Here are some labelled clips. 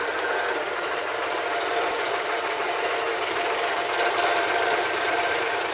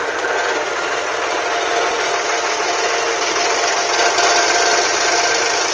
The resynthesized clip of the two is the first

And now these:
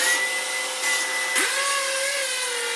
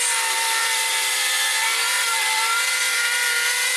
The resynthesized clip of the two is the second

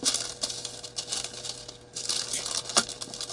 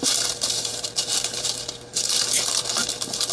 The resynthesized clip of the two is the second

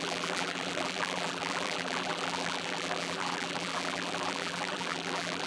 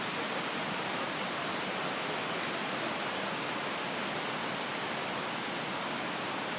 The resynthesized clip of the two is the first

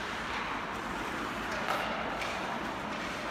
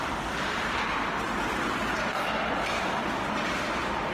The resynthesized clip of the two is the first